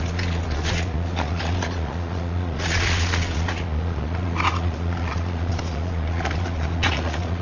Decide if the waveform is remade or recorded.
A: remade